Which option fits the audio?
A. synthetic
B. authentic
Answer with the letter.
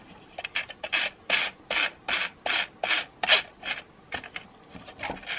B